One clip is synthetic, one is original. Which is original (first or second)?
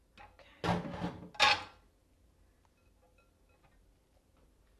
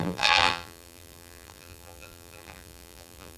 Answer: first